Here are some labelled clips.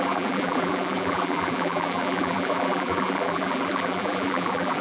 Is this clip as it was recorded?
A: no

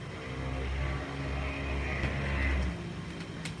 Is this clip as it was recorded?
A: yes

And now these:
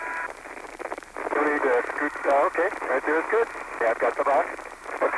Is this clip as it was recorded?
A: yes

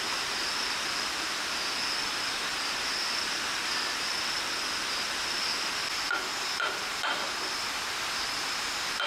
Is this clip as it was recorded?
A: yes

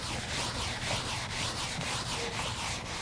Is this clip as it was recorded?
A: yes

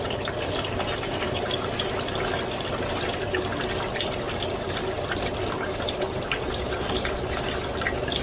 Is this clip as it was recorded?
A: no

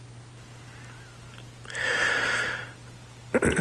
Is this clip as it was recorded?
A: yes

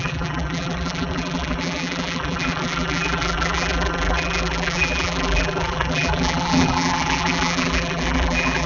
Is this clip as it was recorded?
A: no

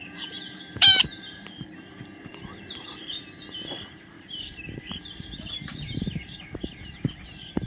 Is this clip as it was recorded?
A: no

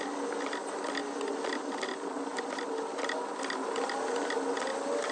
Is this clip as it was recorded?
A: yes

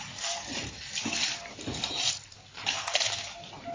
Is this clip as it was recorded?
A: yes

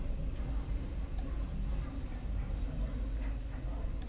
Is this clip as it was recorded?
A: yes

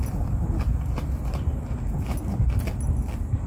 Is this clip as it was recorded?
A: yes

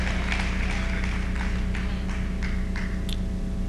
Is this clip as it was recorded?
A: yes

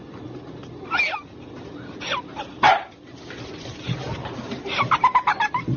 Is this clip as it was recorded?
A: yes